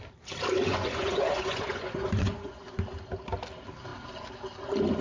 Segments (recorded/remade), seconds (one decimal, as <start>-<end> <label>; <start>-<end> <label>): 0.0-0.7 recorded; 0.7-2.8 remade; 2.8-5.0 recorded